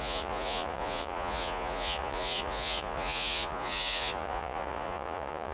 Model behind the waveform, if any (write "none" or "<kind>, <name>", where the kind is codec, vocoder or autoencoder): vocoder, Vocos